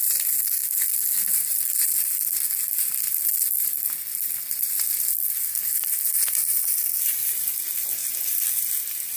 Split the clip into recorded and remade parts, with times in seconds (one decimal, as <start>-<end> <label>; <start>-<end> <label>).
0.0-9.2 recorded